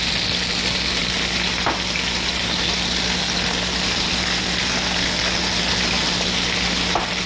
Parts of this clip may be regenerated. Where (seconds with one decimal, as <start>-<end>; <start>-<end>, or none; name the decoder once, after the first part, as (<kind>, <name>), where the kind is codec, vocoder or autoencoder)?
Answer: none